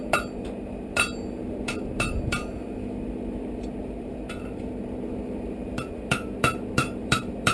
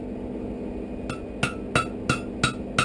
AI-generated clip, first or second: first